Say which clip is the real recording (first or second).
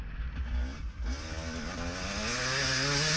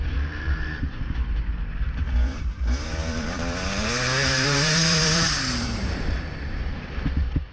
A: first